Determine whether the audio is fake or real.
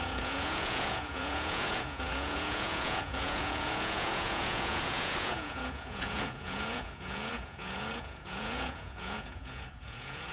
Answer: fake